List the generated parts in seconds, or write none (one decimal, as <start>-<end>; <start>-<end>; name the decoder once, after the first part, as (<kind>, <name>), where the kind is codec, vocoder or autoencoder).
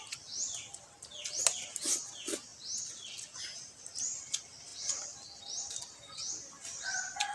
none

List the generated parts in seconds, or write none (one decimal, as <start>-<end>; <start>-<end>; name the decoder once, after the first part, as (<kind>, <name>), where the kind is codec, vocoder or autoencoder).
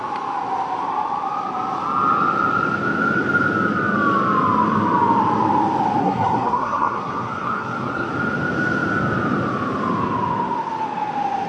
6.0-8.1 (codec, SNAC)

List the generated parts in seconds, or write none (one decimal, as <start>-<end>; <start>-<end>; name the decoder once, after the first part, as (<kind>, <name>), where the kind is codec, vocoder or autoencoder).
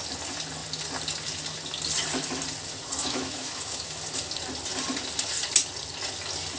3.0-4.0 (autoencoder, DAC-VAE)